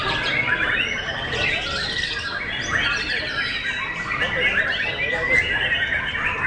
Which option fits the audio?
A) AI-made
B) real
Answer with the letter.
B